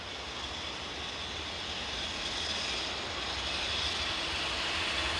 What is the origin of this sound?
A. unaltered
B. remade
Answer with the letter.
A